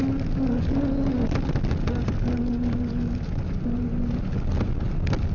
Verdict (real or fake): real